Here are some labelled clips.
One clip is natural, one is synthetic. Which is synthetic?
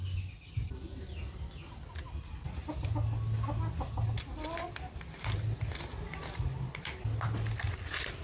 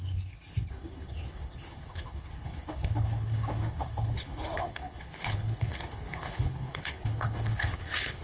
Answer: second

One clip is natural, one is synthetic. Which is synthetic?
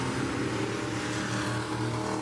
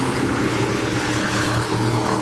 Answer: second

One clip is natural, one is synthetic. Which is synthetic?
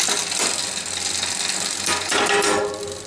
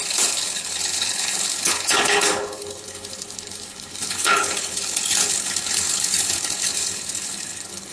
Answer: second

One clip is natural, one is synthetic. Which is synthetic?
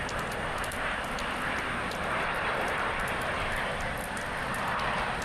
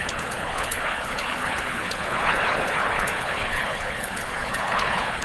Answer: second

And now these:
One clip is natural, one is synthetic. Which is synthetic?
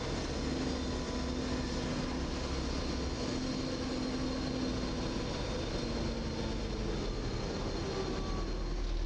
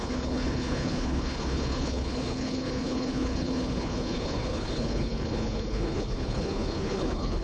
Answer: second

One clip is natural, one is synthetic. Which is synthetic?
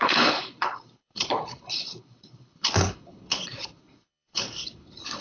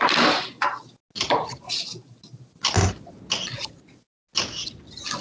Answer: first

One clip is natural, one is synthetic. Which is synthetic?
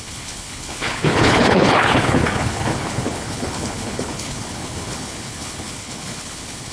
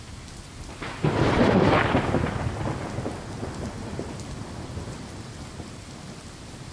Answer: first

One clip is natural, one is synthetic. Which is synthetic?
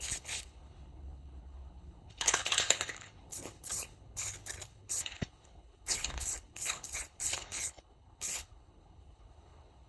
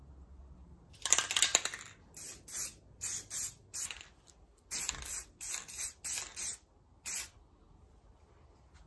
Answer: first